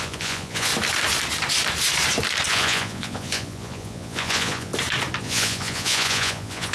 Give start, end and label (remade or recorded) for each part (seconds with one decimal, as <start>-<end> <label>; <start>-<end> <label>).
0.0-0.7 remade; 0.7-2.5 recorded; 2.5-4.7 remade; 4.7-5.2 recorded; 5.2-6.7 remade